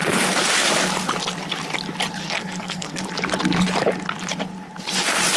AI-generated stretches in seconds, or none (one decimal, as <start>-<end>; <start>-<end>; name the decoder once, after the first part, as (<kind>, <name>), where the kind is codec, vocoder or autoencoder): 2.2-3.0 (codec, SNAC)